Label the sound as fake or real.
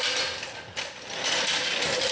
real